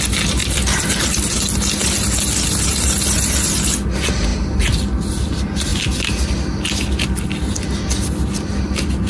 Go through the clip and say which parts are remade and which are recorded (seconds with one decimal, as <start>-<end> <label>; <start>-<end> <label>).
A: 0.0-0.4 recorded; 0.4-1.4 remade; 1.4-9.1 recorded